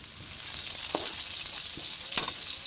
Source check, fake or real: real